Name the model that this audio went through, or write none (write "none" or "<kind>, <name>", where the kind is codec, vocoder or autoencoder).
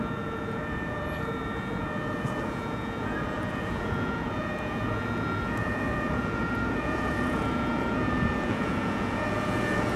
vocoder, Vocos